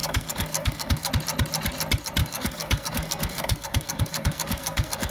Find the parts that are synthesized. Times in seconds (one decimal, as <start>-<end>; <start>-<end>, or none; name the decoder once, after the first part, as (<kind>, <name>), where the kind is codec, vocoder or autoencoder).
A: 0.0-1.1 (codec, SNAC); 2.2-5.1